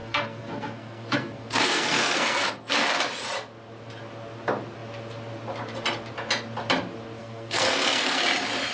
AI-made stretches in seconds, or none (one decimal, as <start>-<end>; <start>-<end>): 0.0-2.5; 7.2-8.2